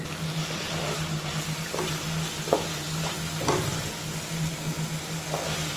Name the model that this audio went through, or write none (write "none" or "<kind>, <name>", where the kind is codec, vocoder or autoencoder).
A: none